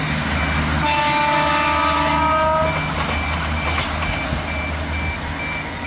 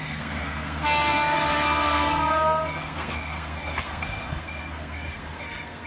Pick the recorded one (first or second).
first